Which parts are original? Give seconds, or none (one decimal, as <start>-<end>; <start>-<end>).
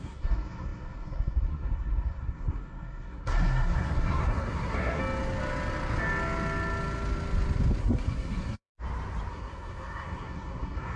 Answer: 5.0-7.8; 8.7-9.3